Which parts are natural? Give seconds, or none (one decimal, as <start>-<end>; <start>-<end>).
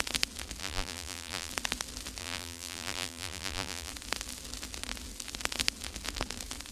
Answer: 0.0-0.6; 1.5-2.2; 3.9-6.7